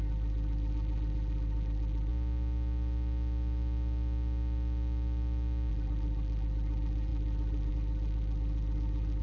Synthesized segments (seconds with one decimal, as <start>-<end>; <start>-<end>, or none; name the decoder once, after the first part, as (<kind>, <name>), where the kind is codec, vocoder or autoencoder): 0.0-2.1 (vocoder, BigVGAN v2); 5.7-9.2